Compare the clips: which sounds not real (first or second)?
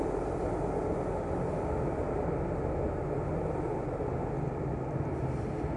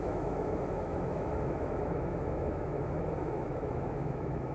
second